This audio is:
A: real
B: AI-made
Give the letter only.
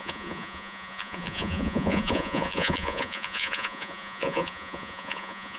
B